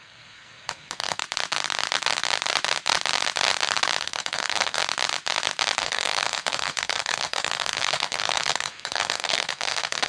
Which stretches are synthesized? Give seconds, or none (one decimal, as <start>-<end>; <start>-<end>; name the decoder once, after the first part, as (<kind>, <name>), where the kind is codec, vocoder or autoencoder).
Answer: 0.0-1.2 (codec, SNAC); 4.0-4.8; 5.8-10.1